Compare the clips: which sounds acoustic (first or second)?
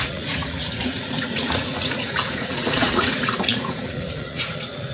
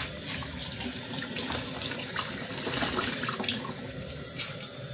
second